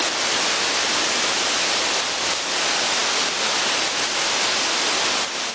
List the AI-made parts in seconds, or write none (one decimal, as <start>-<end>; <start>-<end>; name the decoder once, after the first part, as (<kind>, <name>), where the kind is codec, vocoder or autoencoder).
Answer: none